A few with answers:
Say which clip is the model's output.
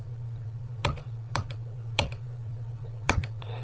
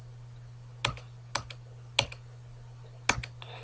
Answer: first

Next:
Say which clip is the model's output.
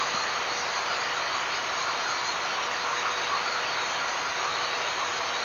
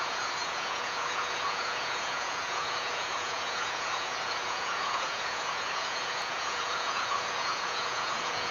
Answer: second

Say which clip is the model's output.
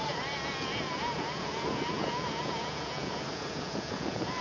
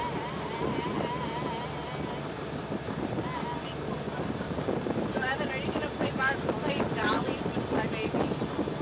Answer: first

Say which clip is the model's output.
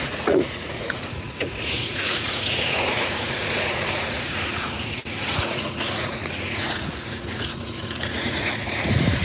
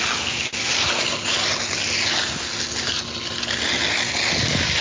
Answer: first